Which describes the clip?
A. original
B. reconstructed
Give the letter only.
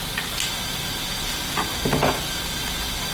A